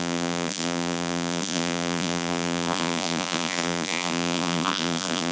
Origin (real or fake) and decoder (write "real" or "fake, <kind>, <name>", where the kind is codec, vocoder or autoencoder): fake, vocoder, BigVGAN v2